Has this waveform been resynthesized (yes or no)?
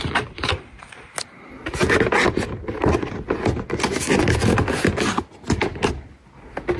no